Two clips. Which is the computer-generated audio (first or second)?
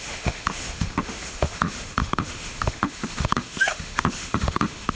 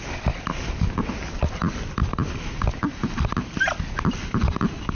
first